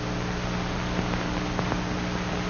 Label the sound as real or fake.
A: real